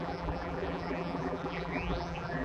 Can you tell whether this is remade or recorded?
remade